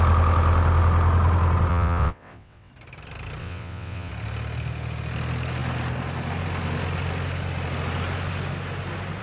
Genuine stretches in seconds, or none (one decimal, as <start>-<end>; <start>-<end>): 0.0-1.7; 2.7-3.4; 4.1-9.2